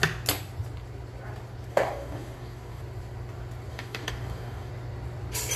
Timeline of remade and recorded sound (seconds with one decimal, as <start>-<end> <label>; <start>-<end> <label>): 0.0-1.7 recorded; 1.7-2.8 remade; 2.8-3.7 recorded; 3.7-4.7 remade; 4.7-5.6 recorded